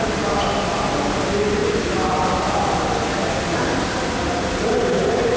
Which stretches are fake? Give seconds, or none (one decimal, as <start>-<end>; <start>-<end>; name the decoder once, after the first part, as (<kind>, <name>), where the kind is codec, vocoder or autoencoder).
none